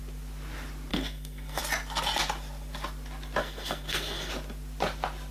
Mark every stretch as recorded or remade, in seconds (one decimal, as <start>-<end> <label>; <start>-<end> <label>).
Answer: 0.0-0.9 recorded; 0.9-1.6 remade; 1.6-3.4 recorded; 3.4-4.3 remade; 4.3-5.3 recorded